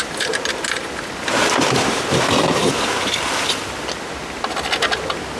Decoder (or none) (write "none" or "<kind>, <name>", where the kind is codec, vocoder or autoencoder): none